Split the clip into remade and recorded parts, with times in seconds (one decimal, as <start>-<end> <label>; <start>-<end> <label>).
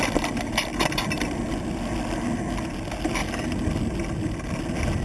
0.0-5.0 recorded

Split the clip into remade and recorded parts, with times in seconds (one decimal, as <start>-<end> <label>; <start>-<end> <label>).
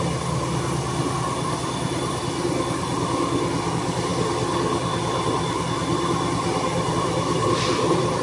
0.0-8.2 recorded